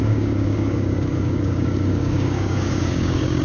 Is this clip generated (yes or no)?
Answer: yes